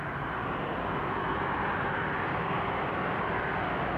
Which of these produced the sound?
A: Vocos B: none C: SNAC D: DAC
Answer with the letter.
B